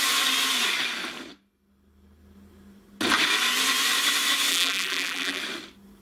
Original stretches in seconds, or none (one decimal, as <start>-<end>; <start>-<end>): 0.0-4.5; 5.4-6.0